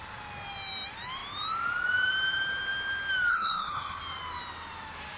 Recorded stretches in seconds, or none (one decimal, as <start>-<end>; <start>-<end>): 0.0-3.3; 4.0-5.2